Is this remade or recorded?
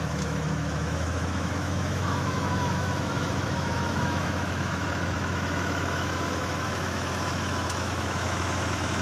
remade